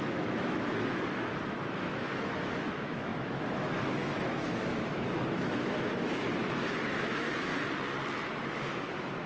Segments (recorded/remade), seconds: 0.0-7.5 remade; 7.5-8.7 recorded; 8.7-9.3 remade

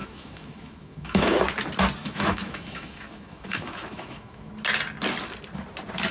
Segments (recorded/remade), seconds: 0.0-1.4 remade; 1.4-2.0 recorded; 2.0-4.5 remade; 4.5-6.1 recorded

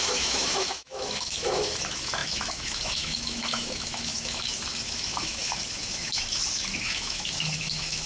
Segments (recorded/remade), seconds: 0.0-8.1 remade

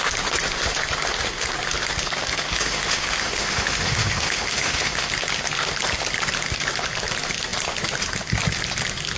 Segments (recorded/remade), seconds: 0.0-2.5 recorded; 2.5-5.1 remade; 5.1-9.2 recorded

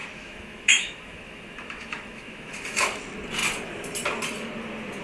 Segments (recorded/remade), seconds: 0.0-3.0 remade; 3.0-5.0 recorded